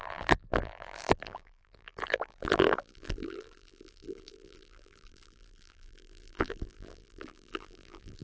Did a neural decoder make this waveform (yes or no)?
yes